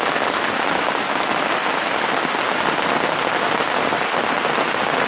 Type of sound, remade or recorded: recorded